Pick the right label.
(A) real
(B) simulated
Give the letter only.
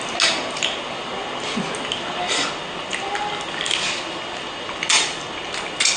A